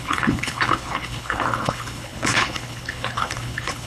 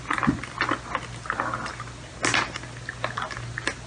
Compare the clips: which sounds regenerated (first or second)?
first